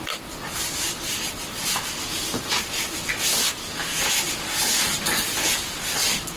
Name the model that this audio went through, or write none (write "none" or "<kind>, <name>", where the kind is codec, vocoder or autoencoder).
none